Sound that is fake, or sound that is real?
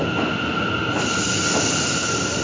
real